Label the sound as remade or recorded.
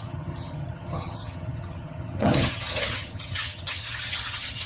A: remade